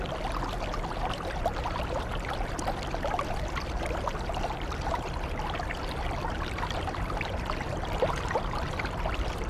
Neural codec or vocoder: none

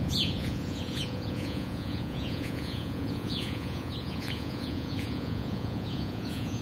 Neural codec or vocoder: vocoder, Vocos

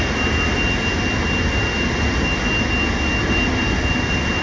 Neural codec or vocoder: none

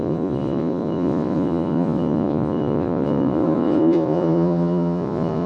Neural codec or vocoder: vocoder, Vocos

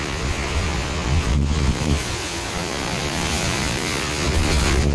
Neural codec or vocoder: vocoder, Vocos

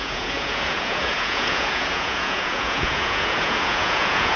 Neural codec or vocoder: vocoder, Vocos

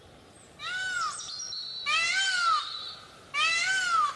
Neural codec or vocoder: none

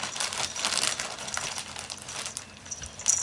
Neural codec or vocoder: none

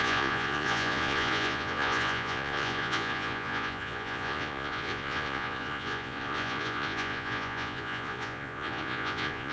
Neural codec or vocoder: vocoder, Vocos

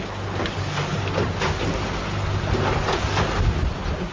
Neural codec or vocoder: none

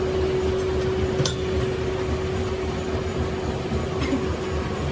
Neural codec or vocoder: none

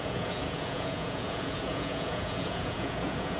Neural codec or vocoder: vocoder, Vocos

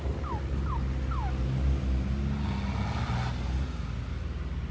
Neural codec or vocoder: none